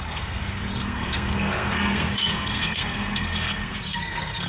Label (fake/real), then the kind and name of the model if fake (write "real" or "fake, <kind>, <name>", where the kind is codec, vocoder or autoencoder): fake, codec, SNAC